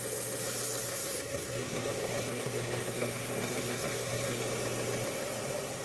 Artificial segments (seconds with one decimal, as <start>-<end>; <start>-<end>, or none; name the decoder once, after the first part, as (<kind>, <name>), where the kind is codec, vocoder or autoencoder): 0.9-4.4 (codec, SNAC)

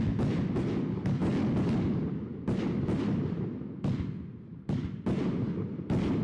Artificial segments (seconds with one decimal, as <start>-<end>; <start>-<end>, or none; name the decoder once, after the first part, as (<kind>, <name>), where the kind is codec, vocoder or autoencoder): none

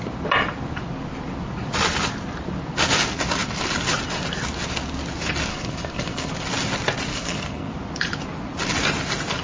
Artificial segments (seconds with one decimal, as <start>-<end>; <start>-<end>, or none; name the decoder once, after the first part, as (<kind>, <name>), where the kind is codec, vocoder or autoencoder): 5.5-6.3 (codec, SNAC); 7.1-7.7